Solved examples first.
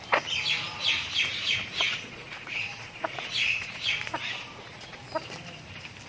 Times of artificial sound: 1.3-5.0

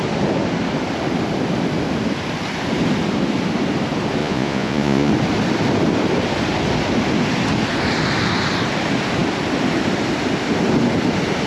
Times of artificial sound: 4.2-5.1

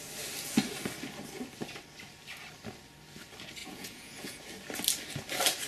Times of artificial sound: 3.6-4.4

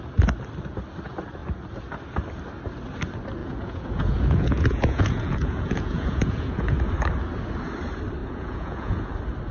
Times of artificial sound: 3.4-6.8; 8.2-9.1

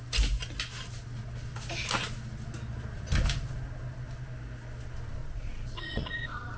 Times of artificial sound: 5.2-6.6

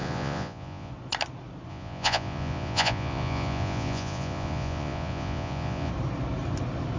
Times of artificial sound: 0.0-0.9; 1.7-5.9